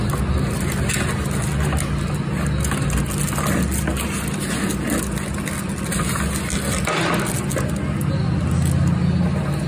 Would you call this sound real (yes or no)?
yes